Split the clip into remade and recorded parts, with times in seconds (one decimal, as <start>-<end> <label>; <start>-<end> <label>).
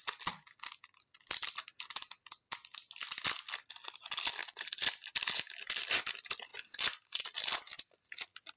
0.0-4.4 recorded; 4.4-5.3 remade; 5.3-8.6 recorded